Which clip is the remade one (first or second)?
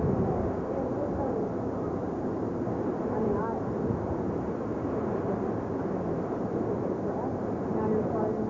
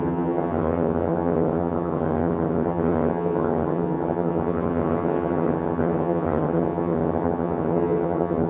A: second